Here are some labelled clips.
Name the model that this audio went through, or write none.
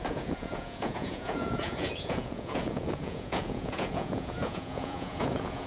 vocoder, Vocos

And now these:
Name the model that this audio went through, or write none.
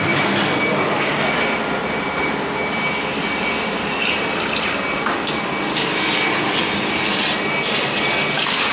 none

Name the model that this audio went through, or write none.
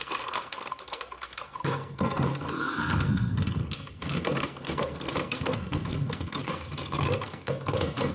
codec, SNAC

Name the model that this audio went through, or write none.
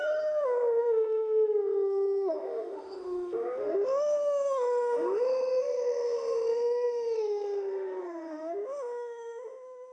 autoencoder, DAC-VAE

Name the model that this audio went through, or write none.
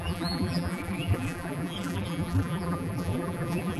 vocoder, BigVGAN v2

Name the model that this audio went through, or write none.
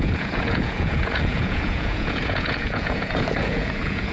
vocoder, Vocos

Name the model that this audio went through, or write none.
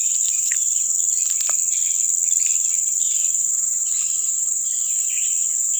vocoder, BigVGAN v2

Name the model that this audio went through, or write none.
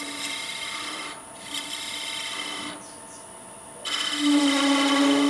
none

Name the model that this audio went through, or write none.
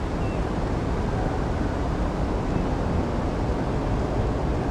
none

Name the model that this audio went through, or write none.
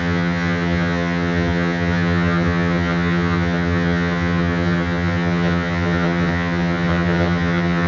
vocoder, HiFi-GAN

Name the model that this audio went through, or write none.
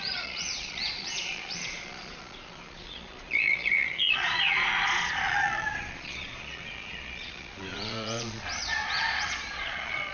vocoder, Vocos